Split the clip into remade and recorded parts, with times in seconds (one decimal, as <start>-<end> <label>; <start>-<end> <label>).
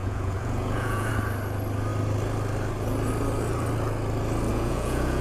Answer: 0.0-1.1 remade; 1.1-4.5 recorded; 4.5-5.2 remade